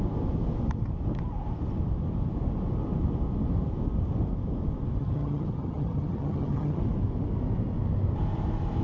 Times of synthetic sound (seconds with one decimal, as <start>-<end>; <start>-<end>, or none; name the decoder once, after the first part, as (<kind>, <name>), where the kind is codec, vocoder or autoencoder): 5.0-6.8 (vocoder, HiFi-GAN)